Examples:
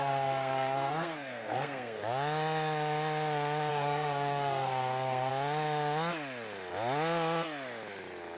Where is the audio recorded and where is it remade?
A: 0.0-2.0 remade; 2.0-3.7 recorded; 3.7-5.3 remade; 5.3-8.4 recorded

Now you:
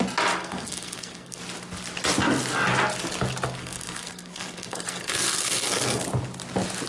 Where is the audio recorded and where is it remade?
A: 0.0-0.4 recorded; 0.4-1.4 remade; 1.4-3.6 recorded; 3.6-6.0 remade; 6.0-6.9 recorded

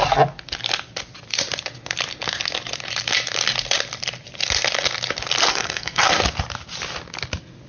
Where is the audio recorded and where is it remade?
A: 0.0-5.5 recorded; 5.5-6.1 remade; 6.1-7.7 recorded

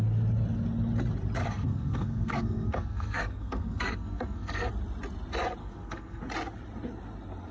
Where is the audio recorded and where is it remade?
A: 0.0-1.4 recorded; 1.4-4.7 remade; 4.7-5.6 recorded; 5.6-6.2 remade; 6.2-7.5 recorded

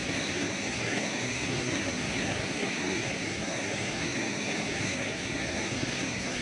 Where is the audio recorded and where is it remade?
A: 0.0-6.4 remade

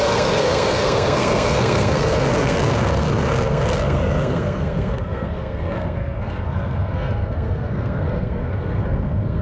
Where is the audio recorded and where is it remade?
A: 0.0-9.4 remade

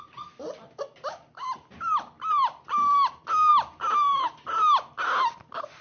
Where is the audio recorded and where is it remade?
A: 0.0-5.8 recorded

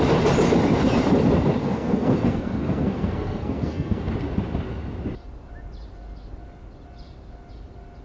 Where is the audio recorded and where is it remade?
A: 0.0-1.6 recorded; 1.6-4.1 remade; 4.1-8.0 recorded